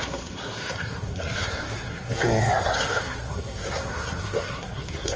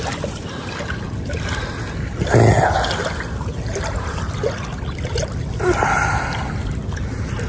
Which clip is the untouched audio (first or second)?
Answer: second